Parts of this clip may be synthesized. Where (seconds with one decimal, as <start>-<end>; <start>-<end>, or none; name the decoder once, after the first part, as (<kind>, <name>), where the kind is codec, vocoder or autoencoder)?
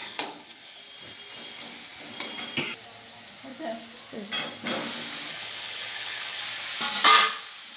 0.0-0.8 (codec, HILCodec); 5.3-6.4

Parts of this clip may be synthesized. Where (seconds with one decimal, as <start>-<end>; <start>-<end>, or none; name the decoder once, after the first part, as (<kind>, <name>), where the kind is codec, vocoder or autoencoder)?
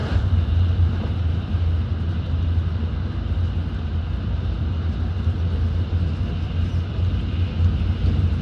0.0-1.3 (vocoder, BigVGAN v2)